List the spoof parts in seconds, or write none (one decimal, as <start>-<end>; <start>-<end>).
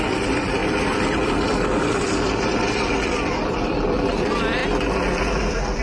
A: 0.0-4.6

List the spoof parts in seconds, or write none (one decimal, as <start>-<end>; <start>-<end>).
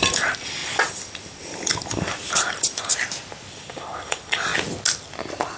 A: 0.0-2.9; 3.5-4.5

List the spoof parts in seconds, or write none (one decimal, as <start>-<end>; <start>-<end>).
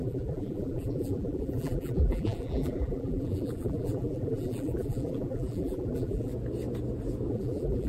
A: 0.0-6.3; 7.3-7.9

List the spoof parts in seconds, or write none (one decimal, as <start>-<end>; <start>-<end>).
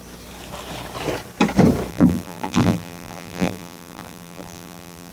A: 1.9-5.1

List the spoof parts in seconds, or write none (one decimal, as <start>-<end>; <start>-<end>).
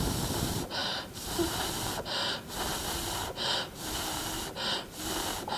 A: 0.8-1.8